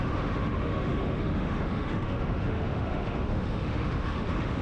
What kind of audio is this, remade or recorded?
remade